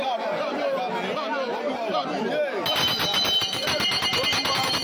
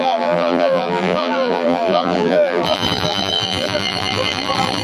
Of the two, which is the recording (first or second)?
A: first